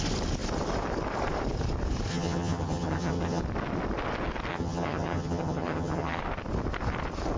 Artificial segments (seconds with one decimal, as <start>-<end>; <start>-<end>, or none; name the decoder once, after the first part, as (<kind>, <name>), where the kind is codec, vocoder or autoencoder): 2.1-3.4 (vocoder, HiFi-GAN); 4.5-6.2